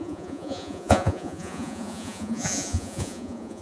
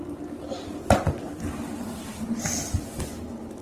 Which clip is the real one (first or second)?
second